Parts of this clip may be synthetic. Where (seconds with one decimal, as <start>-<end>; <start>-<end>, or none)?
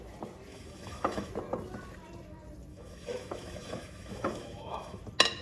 0.5-1.3; 2.7-5.0